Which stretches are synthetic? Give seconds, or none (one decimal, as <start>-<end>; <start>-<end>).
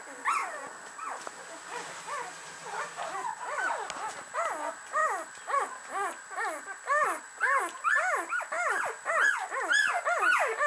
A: none